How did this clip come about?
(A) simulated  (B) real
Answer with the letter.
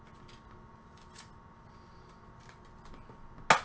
B